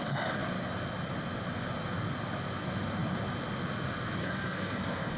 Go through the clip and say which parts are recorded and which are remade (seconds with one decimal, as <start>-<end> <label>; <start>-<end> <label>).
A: 0.0-4.2 recorded; 4.2-5.2 remade